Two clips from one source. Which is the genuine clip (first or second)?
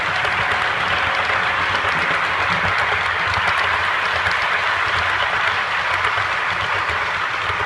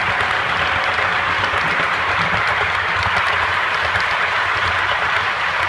first